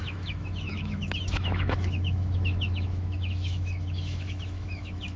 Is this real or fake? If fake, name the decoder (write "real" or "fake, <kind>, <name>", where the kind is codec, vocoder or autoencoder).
fake, autoencoder, DAC-VAE